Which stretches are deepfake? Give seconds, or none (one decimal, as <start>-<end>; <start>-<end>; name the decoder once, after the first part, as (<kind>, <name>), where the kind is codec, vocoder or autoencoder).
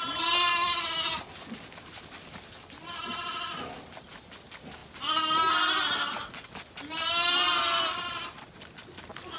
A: none